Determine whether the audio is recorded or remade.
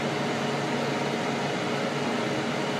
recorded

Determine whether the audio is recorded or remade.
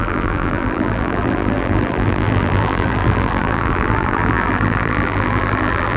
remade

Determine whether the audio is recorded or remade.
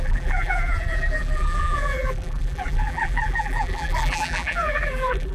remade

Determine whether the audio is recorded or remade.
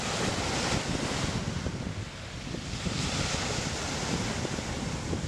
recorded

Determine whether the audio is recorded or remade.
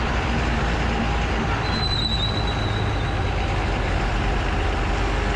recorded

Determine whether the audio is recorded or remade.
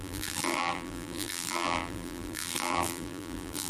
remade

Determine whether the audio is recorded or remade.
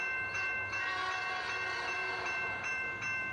remade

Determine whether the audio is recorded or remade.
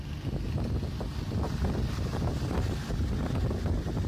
recorded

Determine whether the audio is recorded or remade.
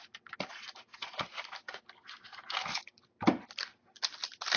recorded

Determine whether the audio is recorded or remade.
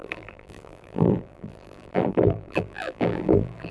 remade